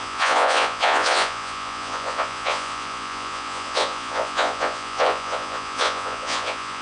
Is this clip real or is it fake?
fake